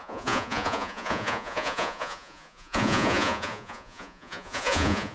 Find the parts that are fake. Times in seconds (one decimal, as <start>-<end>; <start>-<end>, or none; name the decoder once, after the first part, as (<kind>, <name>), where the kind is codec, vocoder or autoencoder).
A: 0.0-5.1 (vocoder, Vocos)